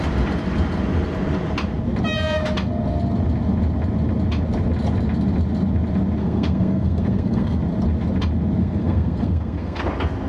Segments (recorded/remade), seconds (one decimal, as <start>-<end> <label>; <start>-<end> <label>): 0.0-6.2 recorded; 6.2-7.6 remade; 7.6-8.6 recorded; 8.6-9.8 remade; 9.8-10.3 recorded